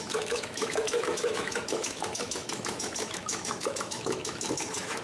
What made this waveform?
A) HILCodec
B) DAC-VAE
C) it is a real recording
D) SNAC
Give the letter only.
B